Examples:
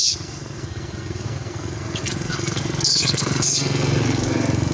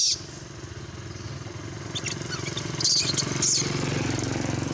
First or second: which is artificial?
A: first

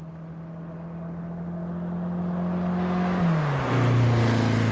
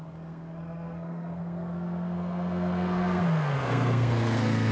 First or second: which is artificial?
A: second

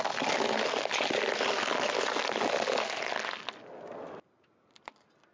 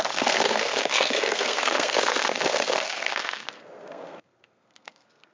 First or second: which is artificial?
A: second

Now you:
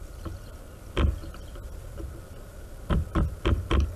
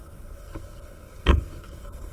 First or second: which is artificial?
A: second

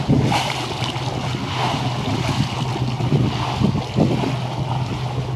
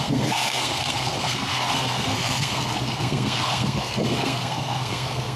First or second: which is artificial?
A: second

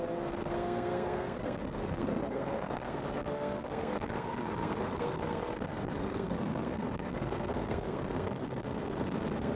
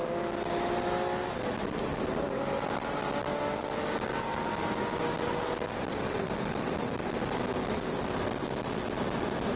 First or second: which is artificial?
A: first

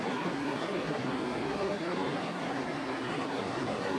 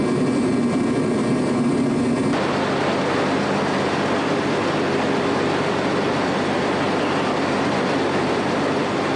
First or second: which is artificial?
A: first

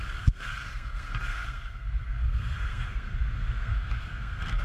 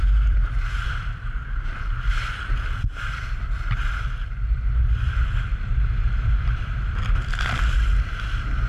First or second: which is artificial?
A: first